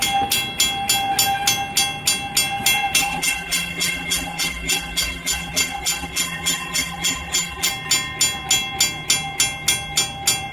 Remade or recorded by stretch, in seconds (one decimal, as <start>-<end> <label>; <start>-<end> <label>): 0.0-3.0 recorded; 3.0-7.7 remade; 7.7-10.5 recorded

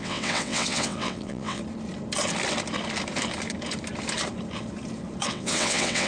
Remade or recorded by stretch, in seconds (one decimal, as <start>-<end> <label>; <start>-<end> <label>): 0.0-1.6 remade; 1.6-5.3 recorded; 5.3-6.1 remade

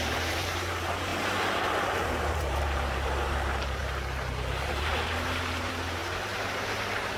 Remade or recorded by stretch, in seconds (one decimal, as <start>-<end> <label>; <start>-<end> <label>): 0.0-1.1 remade; 1.1-2.1 recorded; 2.1-3.8 remade; 3.8-4.5 recorded; 4.5-7.2 remade

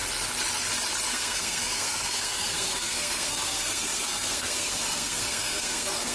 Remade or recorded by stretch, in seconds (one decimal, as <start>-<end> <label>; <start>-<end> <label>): 0.0-1.1 recorded; 1.1-6.1 remade

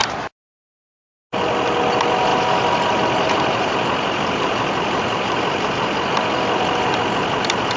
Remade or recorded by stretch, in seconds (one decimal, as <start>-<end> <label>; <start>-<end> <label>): 0.0-7.8 recorded

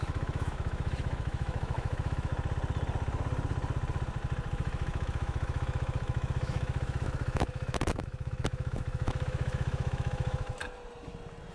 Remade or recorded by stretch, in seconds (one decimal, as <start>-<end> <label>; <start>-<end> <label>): 0.0-2.3 remade; 2.3-4.5 recorded; 4.5-10.6 remade; 10.6-11.5 recorded

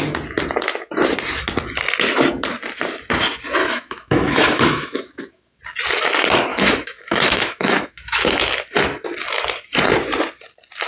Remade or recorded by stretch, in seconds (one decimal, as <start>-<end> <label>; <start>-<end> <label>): 0.0-3.6 recorded; 3.6-5.6 remade; 5.6-6.5 recorded; 6.5-8.4 remade; 8.4-10.9 recorded